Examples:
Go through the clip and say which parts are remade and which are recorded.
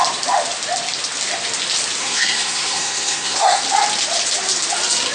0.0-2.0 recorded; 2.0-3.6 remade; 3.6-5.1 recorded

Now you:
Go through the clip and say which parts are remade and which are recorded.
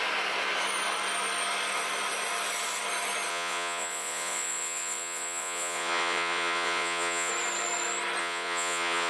0.0-3.3 recorded; 3.3-7.3 remade; 7.3-8.2 recorded; 8.2-9.1 remade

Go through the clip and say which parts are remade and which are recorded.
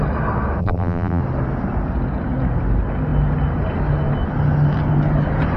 0.0-0.6 recorded; 0.6-1.2 remade; 1.2-5.6 recorded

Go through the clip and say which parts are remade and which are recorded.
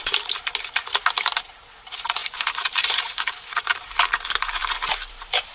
0.0-2.2 recorded; 2.2-4.0 remade; 4.0-5.5 recorded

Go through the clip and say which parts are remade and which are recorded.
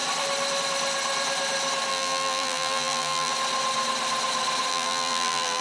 0.0-1.9 recorded; 1.9-3.3 remade; 3.3-4.7 recorded; 4.7-5.6 remade